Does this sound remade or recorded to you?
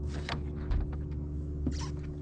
recorded